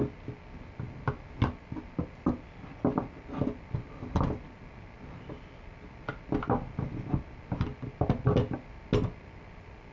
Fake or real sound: real